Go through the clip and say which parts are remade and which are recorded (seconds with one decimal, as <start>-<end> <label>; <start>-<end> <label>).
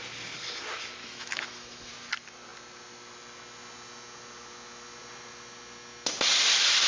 0.0-1.0 recorded; 1.0-1.9 remade; 1.9-6.9 recorded